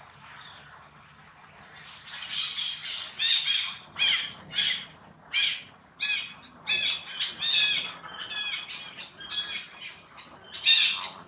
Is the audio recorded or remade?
recorded